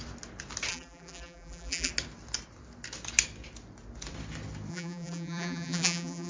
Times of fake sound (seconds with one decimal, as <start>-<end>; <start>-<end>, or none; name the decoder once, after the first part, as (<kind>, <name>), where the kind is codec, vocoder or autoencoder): 0.7-1.9 (vocoder, BigVGAN v2); 4.7-6.3